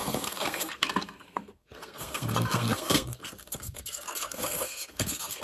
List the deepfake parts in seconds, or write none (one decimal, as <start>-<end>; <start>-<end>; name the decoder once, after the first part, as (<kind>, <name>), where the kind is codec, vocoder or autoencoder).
0.0-5.4 (codec, SNAC)